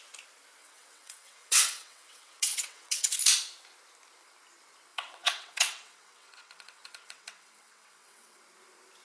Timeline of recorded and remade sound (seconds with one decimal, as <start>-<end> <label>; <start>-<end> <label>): 0.0-0.6 recorded; 0.6-3.2 remade; 3.2-4.9 recorded; 4.9-8.4 remade; 8.4-9.0 recorded